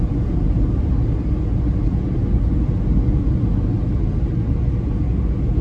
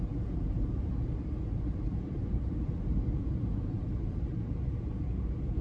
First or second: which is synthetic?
second